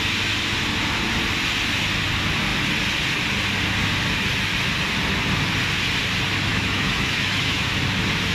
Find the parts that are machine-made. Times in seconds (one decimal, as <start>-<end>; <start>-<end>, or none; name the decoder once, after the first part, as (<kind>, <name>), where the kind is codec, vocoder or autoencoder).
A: 6.5-7.8 (autoencoder, DAC-VAE)